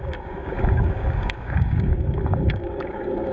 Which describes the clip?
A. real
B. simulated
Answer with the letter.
B